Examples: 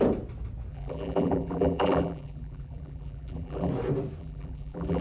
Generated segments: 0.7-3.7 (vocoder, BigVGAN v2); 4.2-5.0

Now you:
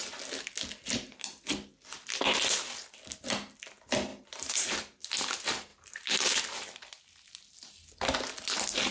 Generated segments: 4.1-5.1 (vocoder, BigVGAN v2); 5.7-6.4

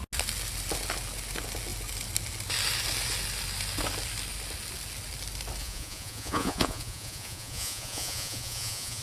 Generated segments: 5.6-9.0 (vocoder, Vocos)

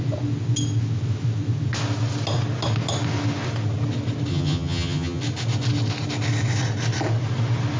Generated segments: 4.3-5.2 (vocoder, HiFi-GAN)

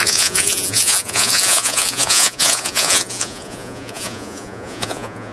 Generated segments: 0.0-5.3 (vocoder, Vocos)

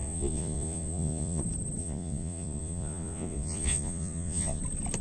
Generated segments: 0.0-1.4 (vocoder, Vocos); 1.8-4.6